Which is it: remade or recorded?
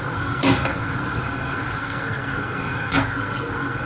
remade